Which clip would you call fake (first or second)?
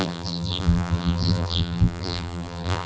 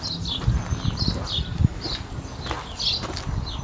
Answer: first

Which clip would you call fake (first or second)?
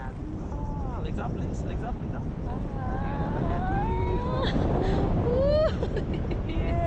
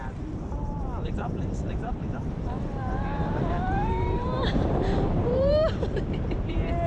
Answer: second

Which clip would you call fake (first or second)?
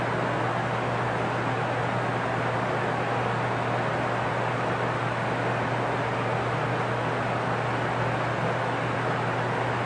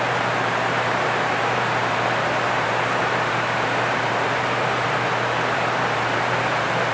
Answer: second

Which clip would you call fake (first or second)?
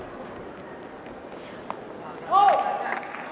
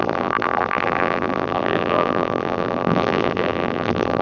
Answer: second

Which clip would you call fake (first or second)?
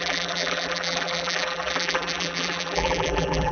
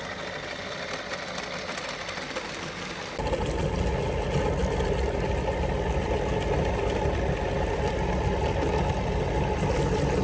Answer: first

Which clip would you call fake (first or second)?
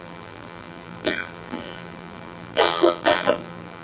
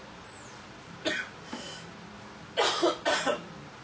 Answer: first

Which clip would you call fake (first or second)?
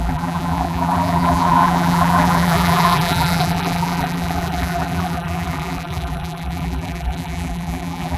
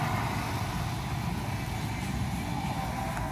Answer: first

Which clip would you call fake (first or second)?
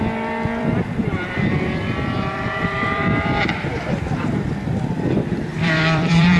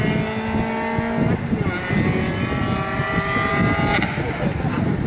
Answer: first